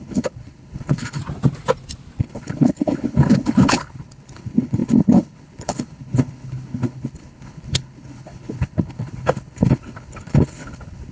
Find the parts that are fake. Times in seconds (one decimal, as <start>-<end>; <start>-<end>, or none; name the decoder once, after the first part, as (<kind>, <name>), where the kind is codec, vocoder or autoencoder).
0.0-1.2 (codec, HILCodec); 2.2-11.1